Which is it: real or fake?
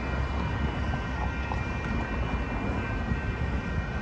real